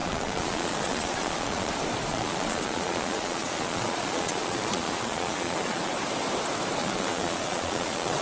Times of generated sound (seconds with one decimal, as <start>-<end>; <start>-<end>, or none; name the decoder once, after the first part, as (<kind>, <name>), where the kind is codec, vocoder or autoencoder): 0.0-1.7 (vocoder, Vocos); 2.1-5.9; 6.8-8.2